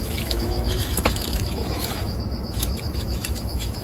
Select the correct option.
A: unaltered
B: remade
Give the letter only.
B